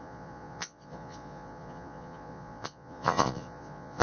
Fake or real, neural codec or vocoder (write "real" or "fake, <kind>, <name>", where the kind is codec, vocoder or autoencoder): fake, vocoder, Vocos